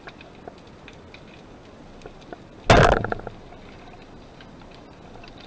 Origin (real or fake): real